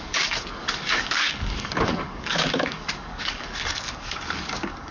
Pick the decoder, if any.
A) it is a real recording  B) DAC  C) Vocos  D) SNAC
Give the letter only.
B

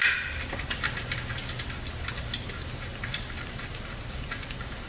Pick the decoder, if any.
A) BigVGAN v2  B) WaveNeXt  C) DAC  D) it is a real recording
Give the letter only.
D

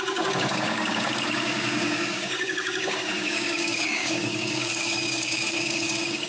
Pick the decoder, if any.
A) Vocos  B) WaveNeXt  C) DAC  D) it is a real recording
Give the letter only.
C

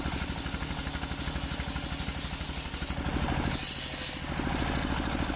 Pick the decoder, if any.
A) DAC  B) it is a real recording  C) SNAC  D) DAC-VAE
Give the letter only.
B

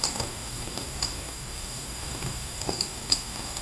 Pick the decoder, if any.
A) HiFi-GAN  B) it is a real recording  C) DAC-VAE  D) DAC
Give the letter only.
D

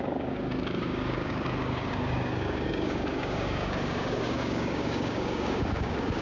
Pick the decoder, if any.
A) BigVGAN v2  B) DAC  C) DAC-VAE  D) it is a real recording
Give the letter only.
B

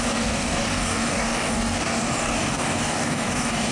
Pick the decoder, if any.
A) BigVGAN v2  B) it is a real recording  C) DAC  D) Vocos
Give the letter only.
C